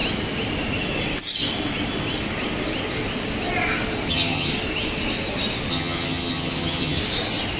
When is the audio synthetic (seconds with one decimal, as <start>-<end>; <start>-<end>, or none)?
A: 4.1-4.5; 5.7-7.0